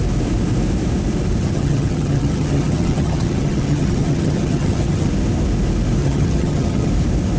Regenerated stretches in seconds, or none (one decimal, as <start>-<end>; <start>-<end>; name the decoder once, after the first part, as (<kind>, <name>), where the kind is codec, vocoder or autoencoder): 1.4-5.1 (vocoder, HiFi-GAN); 6.0-6.9